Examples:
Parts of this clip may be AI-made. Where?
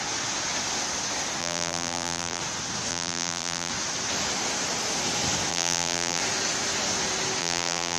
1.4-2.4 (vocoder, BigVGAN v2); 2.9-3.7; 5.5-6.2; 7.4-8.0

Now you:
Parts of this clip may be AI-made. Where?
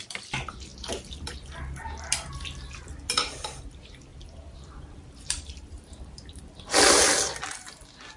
4.1-6.4 (vocoder, BigVGAN v2)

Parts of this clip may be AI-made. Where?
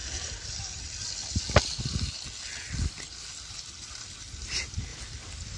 4.9-5.6 (vocoder, BigVGAN v2)